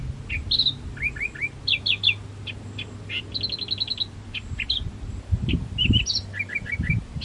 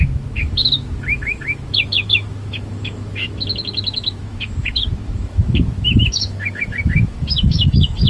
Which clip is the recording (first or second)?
first